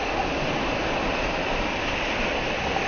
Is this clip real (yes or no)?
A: yes